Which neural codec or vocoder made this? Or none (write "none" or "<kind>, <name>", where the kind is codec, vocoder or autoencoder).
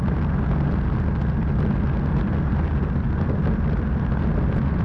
none